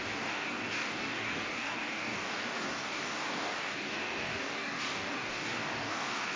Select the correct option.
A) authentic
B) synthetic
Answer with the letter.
B